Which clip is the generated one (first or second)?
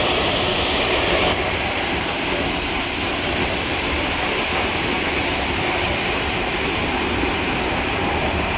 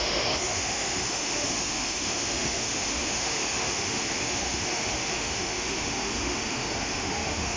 second